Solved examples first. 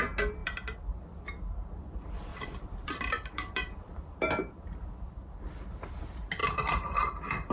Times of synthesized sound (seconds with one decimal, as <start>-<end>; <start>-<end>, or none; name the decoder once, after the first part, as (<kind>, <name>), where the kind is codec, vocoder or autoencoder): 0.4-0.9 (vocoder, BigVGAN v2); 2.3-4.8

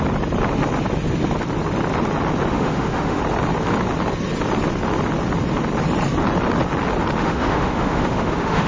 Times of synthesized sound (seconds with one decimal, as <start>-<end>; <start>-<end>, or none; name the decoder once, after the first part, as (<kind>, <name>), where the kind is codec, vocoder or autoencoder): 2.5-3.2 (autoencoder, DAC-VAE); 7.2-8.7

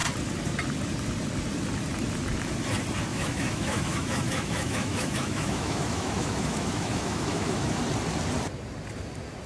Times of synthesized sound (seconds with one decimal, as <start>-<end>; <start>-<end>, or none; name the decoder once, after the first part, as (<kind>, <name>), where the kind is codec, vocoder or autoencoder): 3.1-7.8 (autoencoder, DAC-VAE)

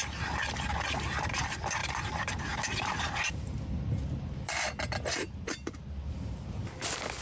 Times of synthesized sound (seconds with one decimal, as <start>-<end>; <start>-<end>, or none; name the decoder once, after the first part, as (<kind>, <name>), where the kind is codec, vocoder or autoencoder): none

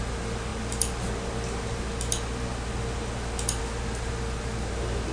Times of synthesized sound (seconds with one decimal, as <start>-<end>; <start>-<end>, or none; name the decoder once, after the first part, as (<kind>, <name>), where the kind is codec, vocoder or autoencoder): none